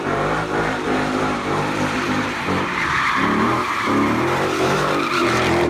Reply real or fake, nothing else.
fake